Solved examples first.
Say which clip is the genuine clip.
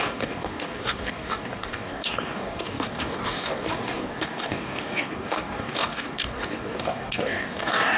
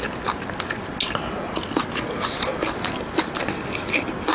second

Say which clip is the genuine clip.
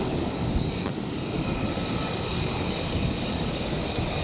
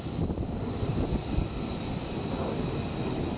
second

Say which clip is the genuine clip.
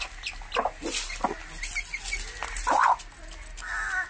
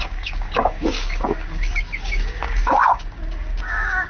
first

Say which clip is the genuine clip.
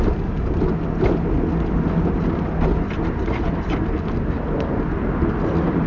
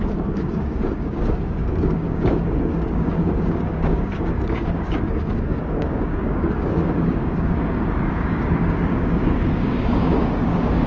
first